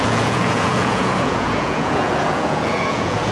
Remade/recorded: remade